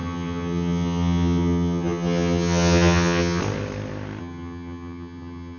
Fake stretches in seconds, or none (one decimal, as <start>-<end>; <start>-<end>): 0.0-3.4; 4.2-5.6